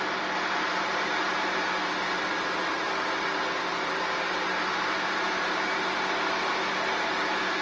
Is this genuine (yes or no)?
yes